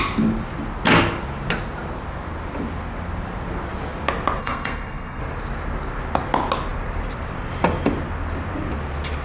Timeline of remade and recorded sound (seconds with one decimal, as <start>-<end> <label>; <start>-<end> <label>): 0.0-4.4 recorded; 4.4-5.2 remade; 5.2-9.2 recorded